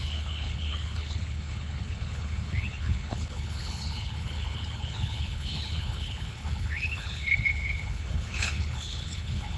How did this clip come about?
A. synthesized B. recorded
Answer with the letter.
A